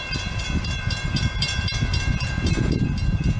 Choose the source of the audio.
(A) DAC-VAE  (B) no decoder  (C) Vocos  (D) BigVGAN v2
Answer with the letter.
D